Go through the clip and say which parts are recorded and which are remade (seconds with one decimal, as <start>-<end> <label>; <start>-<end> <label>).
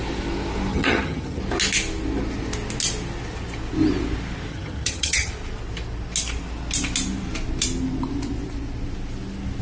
0.0-0.7 recorded; 0.7-1.4 remade; 1.4-4.5 recorded; 4.5-5.3 remade; 5.3-9.6 recorded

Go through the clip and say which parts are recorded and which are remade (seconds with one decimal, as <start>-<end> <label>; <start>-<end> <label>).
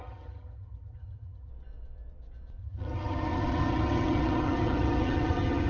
0.0-1.5 remade; 1.5-2.6 recorded; 2.6-5.7 remade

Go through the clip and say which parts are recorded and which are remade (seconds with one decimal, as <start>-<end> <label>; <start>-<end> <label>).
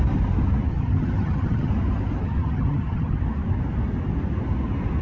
0.0-0.7 recorded; 0.7-1.7 remade; 1.7-2.2 recorded; 2.2-3.2 remade; 3.2-5.0 recorded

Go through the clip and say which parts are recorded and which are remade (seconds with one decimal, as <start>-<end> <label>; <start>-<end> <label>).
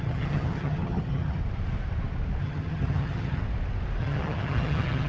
0.0-1.4 remade; 1.4-2.4 recorded; 2.4-3.4 remade; 3.4-4.0 recorded; 4.0-5.1 remade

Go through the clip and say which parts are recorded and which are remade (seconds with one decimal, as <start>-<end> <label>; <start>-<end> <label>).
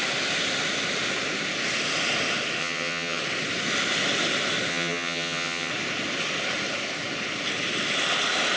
0.0-2.6 recorded; 2.6-3.2 remade; 3.2-4.7 recorded; 4.7-5.7 remade; 5.7-8.6 recorded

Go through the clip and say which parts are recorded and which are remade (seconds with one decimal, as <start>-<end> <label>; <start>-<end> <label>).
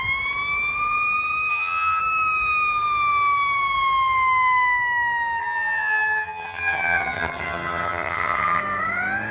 0.0-1.5 recorded; 1.5-2.0 remade; 2.0-5.4 recorded; 5.4-8.6 remade; 8.6-9.3 recorded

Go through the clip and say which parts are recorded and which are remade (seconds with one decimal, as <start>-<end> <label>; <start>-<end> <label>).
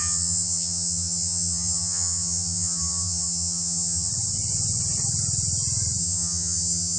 0.0-4.1 remade; 4.1-6.0 recorded; 6.0-7.0 remade